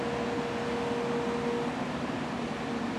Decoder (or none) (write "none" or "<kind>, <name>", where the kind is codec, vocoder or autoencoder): none